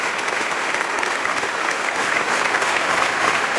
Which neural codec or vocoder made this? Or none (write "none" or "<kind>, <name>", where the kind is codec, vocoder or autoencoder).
autoencoder, DAC-VAE